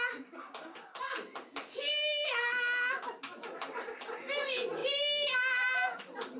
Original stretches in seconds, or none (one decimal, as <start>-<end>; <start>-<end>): 0.0-1.9; 3.6-6.4

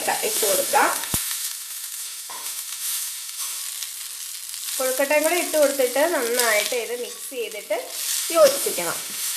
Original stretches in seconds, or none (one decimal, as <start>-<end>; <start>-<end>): 3.6-8.2

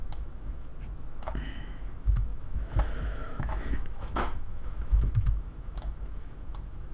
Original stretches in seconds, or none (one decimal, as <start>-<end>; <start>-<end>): 0.7-1.2

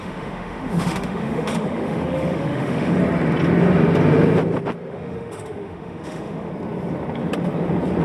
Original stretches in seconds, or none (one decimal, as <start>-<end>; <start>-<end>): 3.0-4.9; 6.5-8.0

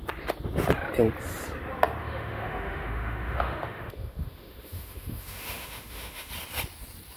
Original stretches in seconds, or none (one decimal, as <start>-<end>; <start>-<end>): 0.0-2.0; 6.3-7.2

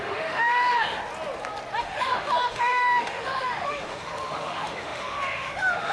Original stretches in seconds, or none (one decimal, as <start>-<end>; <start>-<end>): 1.0-1.8

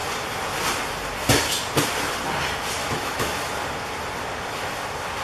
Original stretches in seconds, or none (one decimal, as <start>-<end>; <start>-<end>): 0.0-2.8; 3.5-5.2

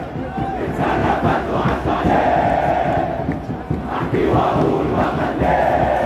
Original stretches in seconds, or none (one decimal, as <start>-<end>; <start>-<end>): 0.0-1.0; 2.0-4.2